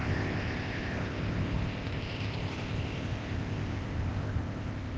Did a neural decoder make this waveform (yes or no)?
yes